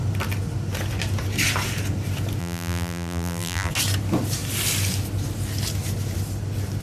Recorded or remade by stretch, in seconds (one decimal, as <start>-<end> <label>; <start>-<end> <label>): 0.0-2.4 recorded; 2.4-3.7 remade; 3.7-6.8 recorded